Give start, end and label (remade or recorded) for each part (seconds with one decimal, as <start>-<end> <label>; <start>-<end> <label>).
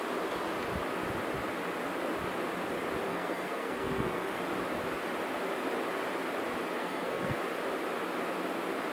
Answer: 0.0-3.1 recorded; 3.1-4.4 remade; 4.4-6.8 recorded; 6.8-7.4 remade; 7.4-8.9 recorded